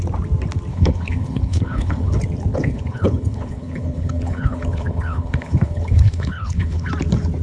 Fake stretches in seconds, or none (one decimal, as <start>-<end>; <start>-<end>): 0.7-2.1; 2.5-6.9